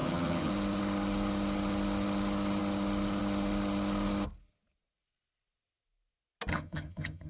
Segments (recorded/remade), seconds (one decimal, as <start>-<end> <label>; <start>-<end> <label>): 0.0-0.5 remade; 0.5-6.5 recorded; 6.5-7.3 remade